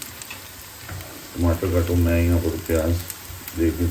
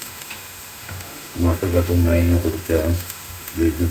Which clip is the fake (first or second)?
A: second